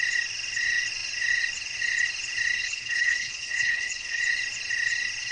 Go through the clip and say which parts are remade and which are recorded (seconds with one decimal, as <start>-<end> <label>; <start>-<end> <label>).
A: 0.0-2.6 recorded; 2.6-4.2 remade; 4.2-5.3 recorded

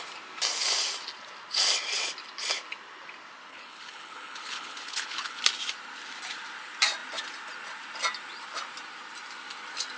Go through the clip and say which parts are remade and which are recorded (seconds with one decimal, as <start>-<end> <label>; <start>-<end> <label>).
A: 0.0-3.5 recorded; 3.5-5.4 remade; 5.4-10.0 recorded

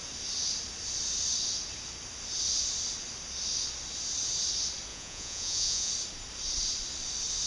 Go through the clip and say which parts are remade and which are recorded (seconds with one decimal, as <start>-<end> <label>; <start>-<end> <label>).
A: 0.0-4.9 recorded; 4.9-5.9 remade; 5.9-7.5 recorded

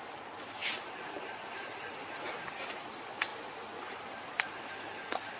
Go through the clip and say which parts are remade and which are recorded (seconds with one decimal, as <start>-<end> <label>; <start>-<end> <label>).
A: 0.0-5.4 recorded

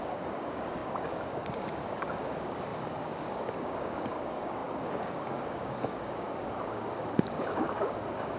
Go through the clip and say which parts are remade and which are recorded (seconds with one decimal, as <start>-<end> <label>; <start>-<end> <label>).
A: 0.0-8.4 remade